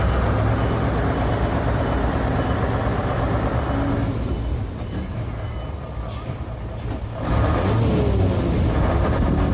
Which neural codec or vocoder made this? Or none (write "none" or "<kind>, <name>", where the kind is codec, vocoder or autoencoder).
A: none